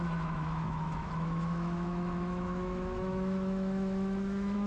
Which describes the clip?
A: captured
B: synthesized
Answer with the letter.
B